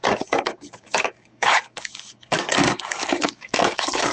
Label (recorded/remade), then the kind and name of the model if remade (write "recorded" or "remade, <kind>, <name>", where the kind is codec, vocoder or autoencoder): remade, codec, DAC